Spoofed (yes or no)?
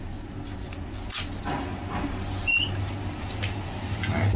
no